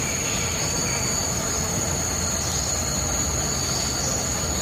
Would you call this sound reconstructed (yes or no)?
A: no